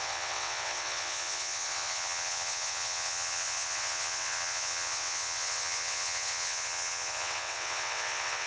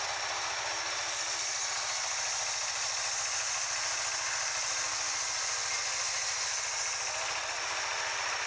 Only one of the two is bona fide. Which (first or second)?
second